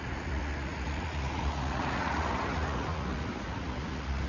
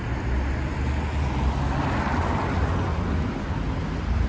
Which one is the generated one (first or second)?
first